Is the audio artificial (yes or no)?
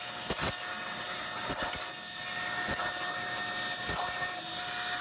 no